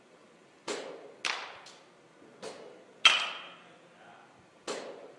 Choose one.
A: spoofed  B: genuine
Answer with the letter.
B